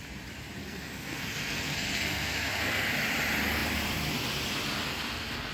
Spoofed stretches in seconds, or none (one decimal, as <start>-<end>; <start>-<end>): 0.6-2.9; 4.9-5.5